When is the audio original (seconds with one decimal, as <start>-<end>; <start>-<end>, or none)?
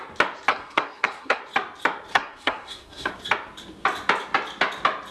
0.0-0.5; 1.4-2.1; 3.1-5.1